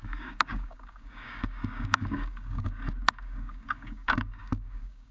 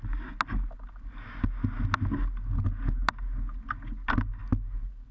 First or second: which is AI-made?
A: first